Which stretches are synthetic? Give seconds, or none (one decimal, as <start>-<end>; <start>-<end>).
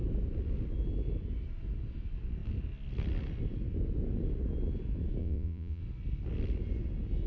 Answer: 5.2-5.8